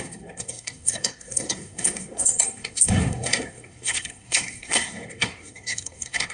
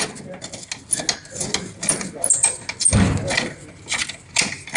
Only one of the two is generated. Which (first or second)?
first